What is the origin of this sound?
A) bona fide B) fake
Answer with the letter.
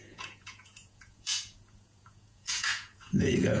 B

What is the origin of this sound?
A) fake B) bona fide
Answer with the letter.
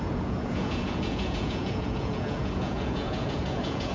A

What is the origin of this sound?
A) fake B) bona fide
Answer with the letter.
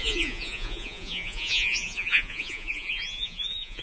A